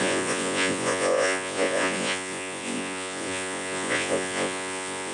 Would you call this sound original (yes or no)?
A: no